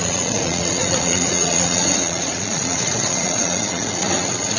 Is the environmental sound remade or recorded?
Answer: remade